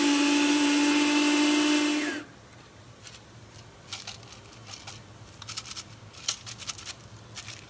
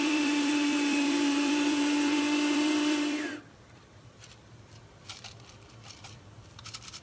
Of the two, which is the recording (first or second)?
first